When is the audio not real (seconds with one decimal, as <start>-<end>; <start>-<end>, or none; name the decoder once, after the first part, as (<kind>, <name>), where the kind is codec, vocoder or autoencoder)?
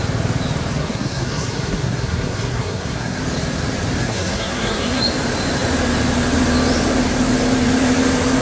0.8-3.2 (codec, SNAC); 4.0-5.0